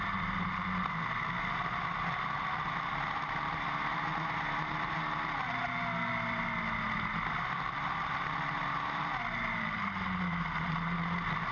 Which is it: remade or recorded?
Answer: recorded